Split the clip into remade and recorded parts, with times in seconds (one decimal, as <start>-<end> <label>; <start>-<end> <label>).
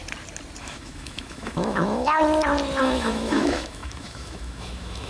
0.0-0.6 recorded; 0.6-2.2 remade; 2.2-2.8 recorded; 2.8-5.1 remade